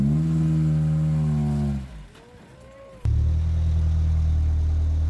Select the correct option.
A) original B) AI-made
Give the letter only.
A